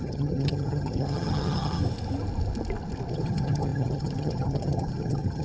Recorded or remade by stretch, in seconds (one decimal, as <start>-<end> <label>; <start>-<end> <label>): 0.0-1.8 remade; 1.8-3.1 recorded; 3.1-5.4 remade